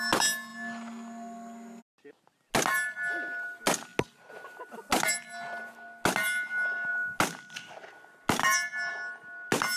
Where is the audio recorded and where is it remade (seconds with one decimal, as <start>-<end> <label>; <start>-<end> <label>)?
0.0-9.8 recorded